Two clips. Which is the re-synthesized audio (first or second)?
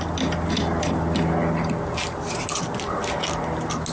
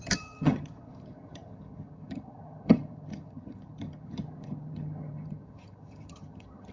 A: second